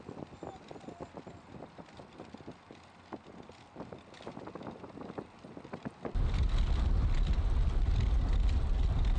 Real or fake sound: real